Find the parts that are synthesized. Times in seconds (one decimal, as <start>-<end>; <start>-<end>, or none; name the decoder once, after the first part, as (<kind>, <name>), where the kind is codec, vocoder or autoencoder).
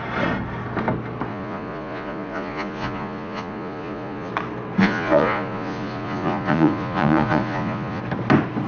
1.3-4.3 (vocoder, Vocos); 4.8-8.0